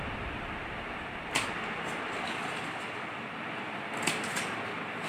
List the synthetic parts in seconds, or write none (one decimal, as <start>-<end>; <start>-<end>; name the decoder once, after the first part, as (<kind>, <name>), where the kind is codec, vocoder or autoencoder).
none